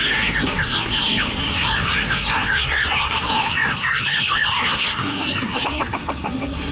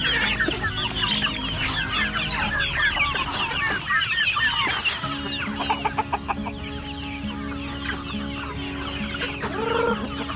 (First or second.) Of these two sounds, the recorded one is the second